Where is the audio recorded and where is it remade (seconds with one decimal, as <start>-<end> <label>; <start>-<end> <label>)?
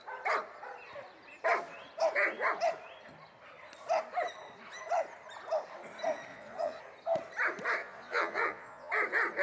0.0-6.3 recorded; 6.3-6.8 remade; 6.8-7.8 recorded; 7.8-8.9 remade; 8.9-9.4 recorded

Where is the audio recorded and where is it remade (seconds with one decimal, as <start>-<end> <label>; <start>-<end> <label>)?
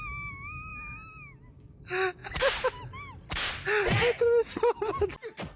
0.0-5.6 recorded